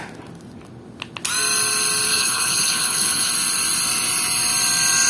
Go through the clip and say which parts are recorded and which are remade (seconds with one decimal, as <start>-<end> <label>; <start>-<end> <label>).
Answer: 0.0-2.1 recorded; 2.1-3.3 remade; 3.3-5.1 recorded